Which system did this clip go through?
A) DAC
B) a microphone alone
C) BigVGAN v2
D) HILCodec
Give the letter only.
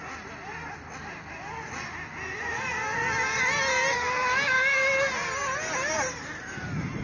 B